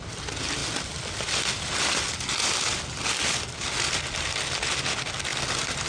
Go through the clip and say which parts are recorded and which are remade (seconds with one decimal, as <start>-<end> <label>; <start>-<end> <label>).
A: 0.0-5.9 recorded